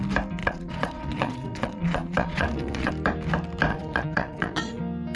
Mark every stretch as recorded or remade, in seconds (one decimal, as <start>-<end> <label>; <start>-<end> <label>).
0.0-0.4 recorded; 0.4-2.9 remade; 2.9-3.7 recorded; 3.7-4.8 remade; 4.8-5.2 recorded